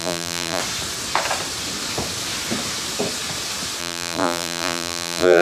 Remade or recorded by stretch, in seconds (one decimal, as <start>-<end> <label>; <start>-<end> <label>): 0.0-0.6 remade; 0.6-3.8 recorded; 3.8-5.4 remade